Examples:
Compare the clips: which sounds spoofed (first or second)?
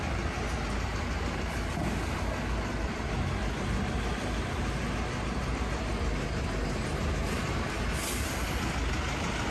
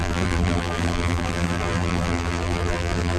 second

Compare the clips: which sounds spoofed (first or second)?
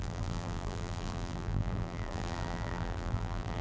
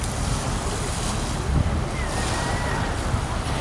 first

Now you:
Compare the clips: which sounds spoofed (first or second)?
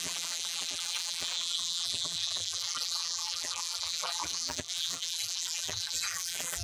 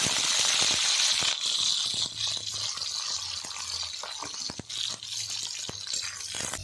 first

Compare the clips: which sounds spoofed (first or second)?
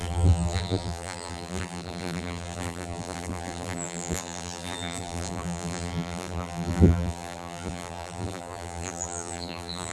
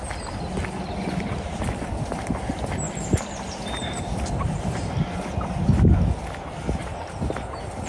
first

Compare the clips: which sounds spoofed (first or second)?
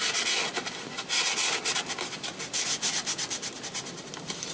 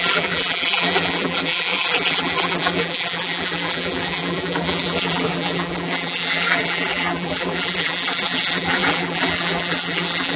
second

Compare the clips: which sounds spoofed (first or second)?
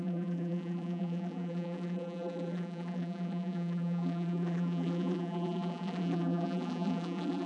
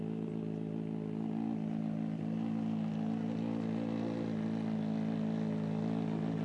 first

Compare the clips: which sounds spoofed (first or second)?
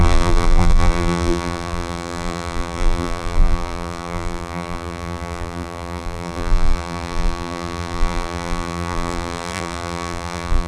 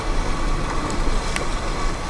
first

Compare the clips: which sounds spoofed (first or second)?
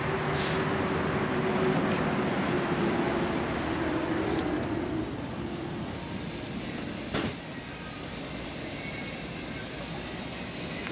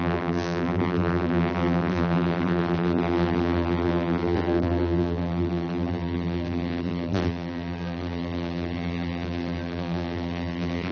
second